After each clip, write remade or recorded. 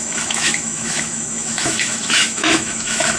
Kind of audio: remade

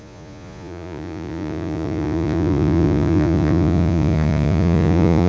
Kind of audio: remade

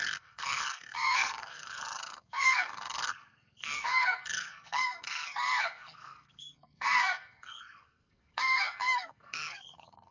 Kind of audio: remade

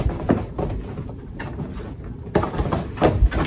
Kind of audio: recorded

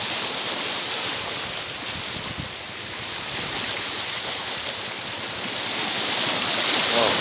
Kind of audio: recorded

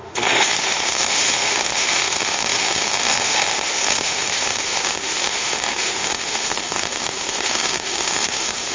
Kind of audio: remade